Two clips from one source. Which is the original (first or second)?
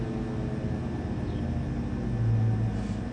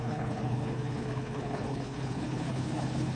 first